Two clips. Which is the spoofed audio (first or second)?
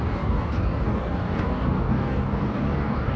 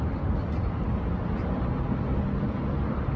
first